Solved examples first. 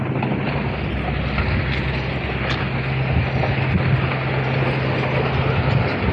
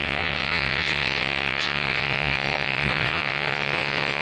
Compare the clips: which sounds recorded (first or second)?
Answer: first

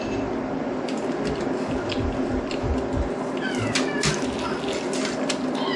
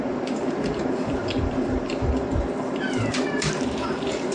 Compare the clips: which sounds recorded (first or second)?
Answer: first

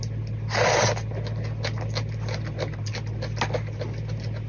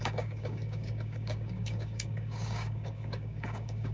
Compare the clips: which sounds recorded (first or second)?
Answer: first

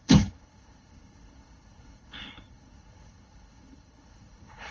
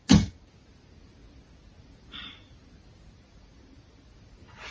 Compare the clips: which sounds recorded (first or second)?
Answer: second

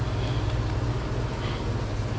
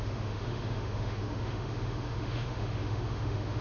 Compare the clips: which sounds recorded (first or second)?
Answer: first